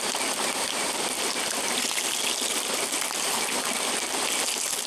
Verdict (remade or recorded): recorded